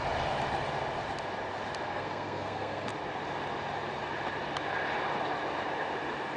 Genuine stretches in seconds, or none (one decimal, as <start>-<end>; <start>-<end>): 0.0-1.9; 2.9-6.4